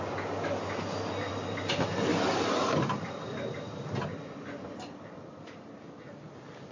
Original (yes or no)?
yes